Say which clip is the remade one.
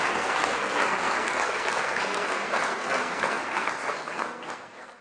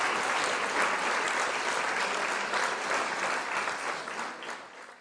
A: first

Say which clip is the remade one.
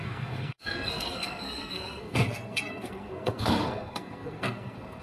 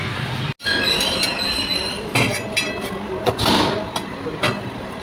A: first